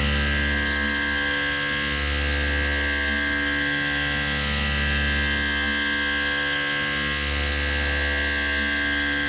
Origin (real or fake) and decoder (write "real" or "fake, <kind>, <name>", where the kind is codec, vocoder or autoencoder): real